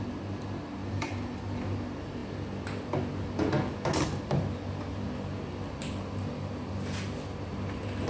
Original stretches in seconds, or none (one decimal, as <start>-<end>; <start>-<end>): 0.0-0.8; 1.4-8.1